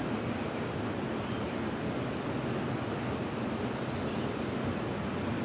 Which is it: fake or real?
real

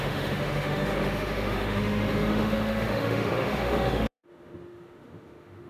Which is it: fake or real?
fake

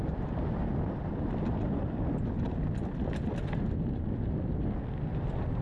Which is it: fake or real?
real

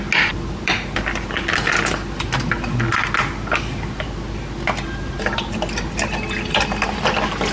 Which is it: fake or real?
real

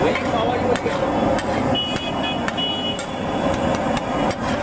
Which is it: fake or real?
real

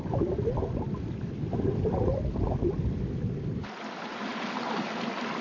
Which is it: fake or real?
real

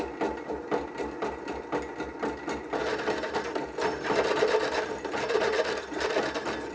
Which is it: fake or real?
real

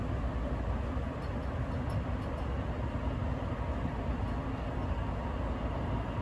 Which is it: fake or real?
real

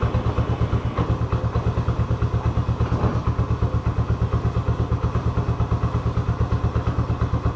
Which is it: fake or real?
real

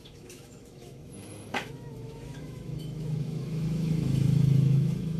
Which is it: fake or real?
fake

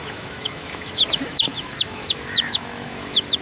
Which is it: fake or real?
fake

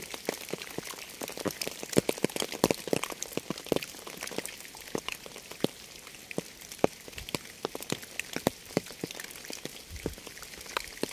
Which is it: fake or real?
real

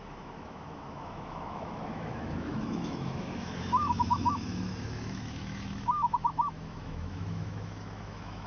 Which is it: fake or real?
fake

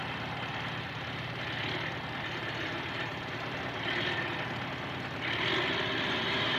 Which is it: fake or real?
real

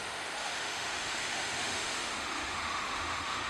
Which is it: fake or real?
fake